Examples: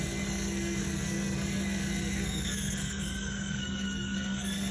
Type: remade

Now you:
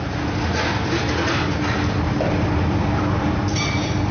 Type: recorded